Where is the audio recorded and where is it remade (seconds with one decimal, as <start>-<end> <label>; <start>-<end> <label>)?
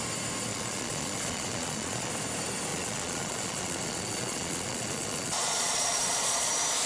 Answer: 0.0-0.5 recorded; 0.5-2.1 remade; 2.1-2.7 recorded; 2.7-6.5 remade; 6.5-6.9 recorded